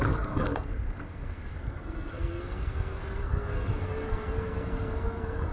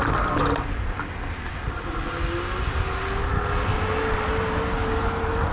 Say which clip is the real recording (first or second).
second